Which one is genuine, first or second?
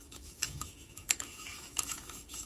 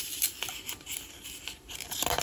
second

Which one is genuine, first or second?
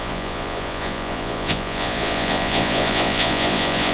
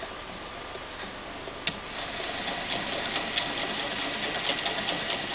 second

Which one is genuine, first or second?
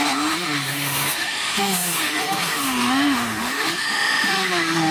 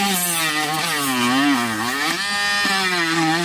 second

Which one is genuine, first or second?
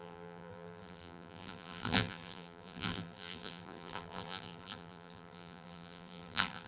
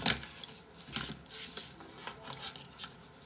second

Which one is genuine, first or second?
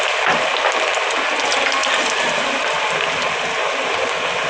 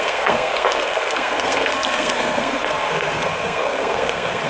first